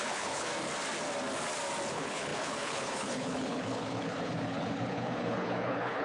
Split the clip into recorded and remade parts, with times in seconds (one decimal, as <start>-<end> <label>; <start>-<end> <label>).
0.0-0.5 remade; 0.5-1.9 recorded; 1.9-6.0 remade